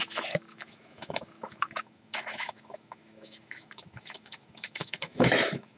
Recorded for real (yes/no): no